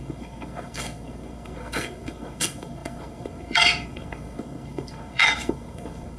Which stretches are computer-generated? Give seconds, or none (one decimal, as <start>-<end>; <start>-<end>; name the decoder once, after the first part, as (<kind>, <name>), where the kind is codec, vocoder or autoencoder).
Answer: 0.0-6.2 (codec, SNAC)